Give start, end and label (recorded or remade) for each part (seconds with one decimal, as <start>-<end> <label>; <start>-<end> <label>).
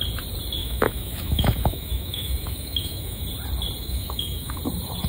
0.0-0.6 recorded; 0.6-3.2 remade; 3.2-3.8 recorded; 3.8-4.6 remade; 4.6-5.1 recorded